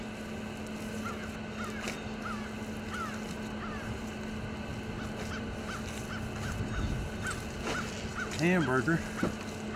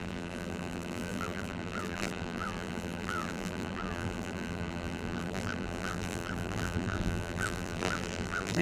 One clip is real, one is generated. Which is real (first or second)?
first